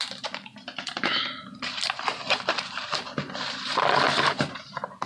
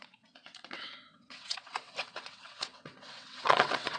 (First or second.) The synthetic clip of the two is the second